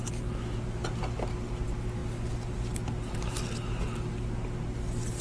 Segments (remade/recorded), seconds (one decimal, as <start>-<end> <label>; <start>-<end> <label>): 0.0-5.2 recorded